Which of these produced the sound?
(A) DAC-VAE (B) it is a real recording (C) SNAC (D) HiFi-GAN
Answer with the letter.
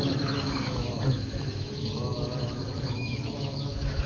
A